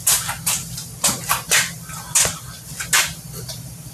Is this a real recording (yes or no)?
yes